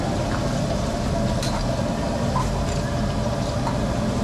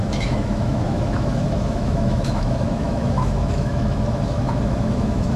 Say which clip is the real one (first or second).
first